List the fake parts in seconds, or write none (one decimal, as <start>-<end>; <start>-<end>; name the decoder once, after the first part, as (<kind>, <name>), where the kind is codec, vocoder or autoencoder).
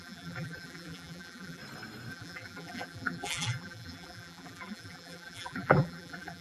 0.0-1.6 (vocoder, BigVGAN v2); 2.1-6.4